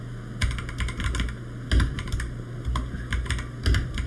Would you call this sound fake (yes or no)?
no